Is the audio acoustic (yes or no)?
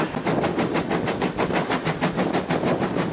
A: yes